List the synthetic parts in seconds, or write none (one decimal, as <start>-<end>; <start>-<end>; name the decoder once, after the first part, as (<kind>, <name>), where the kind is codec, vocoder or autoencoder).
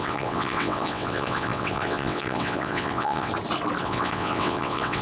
0.0-3.3 (vocoder, WaveNeXt); 3.8-5.0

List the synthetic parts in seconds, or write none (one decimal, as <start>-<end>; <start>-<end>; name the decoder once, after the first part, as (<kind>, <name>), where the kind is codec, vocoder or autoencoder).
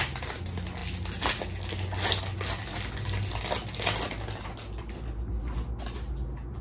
none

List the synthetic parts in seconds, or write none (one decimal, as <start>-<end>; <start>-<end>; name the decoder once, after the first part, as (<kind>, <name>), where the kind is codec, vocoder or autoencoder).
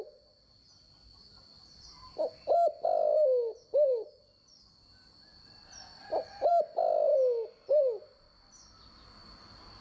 none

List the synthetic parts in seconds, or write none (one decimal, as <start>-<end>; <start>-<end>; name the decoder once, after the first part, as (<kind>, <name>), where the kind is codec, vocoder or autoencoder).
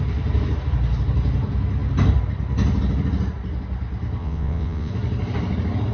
4.2-4.9 (vocoder, WaveNeXt)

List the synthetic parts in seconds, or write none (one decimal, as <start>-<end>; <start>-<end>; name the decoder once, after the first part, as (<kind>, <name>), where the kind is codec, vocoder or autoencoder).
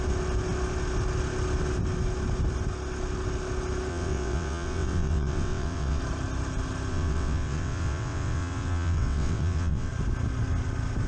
3.9-6.0 (vocoder, WaveNeXt); 6.9-9.9